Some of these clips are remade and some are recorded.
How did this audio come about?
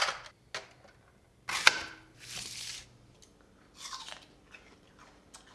recorded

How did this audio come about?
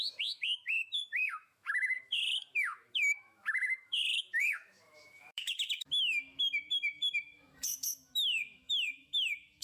remade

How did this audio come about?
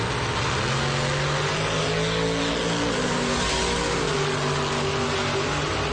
recorded